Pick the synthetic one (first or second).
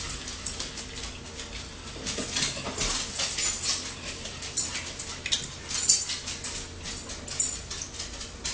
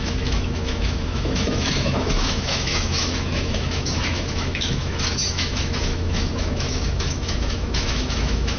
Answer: second